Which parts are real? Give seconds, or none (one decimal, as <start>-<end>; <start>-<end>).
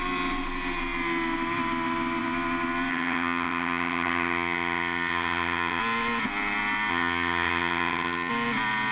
0.0-2.9; 5.8-6.9; 8.3-8.9